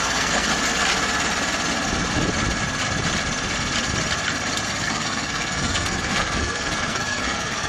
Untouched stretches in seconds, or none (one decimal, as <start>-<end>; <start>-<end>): 0.5-4.8